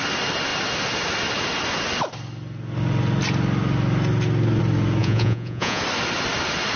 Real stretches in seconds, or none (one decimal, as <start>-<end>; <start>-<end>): 0.0-5.0; 5.8-6.8